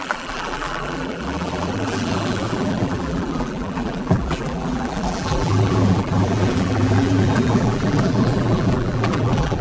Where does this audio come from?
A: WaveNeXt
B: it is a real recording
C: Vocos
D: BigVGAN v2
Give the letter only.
D